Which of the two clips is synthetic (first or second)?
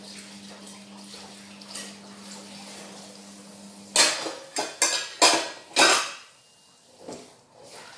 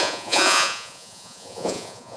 second